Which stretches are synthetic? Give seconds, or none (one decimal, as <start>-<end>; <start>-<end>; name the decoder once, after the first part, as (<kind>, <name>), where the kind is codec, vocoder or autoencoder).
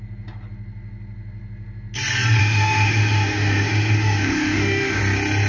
2.4-5.0 (autoencoder, DAC-VAE)